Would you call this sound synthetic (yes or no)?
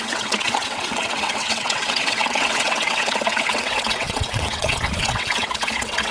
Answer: yes